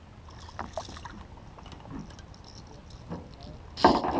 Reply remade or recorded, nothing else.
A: recorded